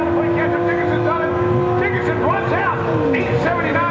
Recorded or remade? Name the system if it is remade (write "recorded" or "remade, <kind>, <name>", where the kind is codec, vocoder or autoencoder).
recorded